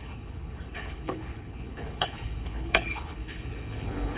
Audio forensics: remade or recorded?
remade